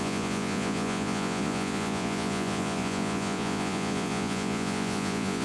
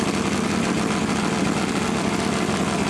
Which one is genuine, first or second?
second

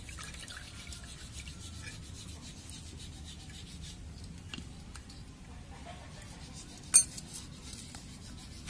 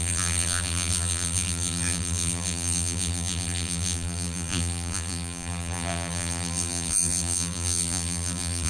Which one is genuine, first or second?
first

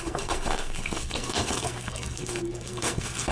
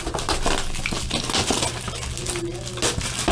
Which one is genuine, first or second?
second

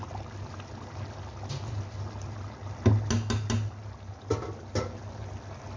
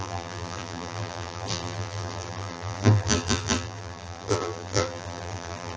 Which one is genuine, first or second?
first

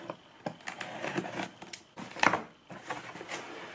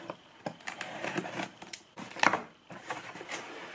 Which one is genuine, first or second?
first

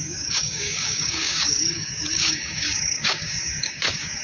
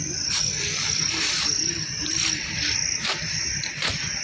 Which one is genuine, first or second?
second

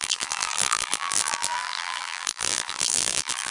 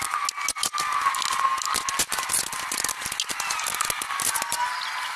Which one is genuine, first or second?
second